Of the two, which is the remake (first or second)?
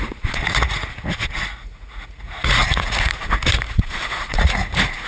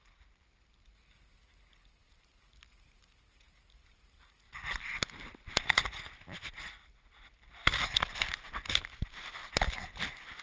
first